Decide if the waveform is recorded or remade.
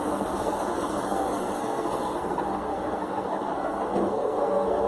remade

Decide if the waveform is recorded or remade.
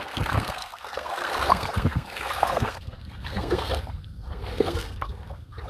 remade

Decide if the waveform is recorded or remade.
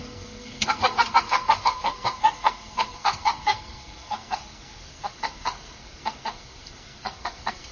remade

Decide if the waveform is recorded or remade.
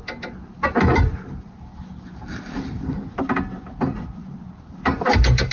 recorded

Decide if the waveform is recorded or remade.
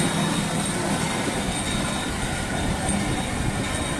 recorded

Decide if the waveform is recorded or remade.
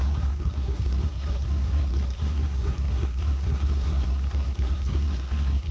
remade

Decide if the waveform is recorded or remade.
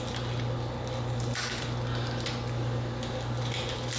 recorded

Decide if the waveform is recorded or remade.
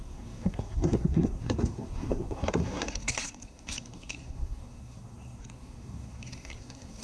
remade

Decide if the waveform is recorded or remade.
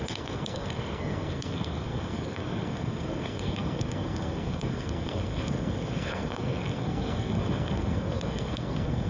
remade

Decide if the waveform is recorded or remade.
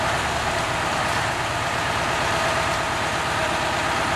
recorded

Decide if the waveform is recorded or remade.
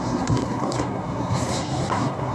remade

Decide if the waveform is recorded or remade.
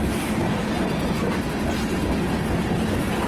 recorded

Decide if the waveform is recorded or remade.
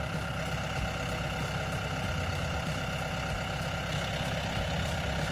recorded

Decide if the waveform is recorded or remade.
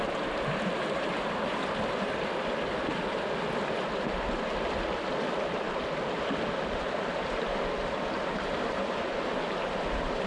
recorded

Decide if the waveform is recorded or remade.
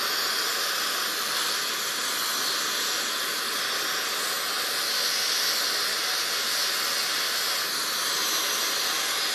recorded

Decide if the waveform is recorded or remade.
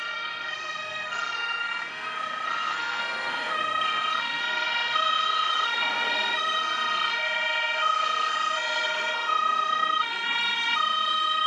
remade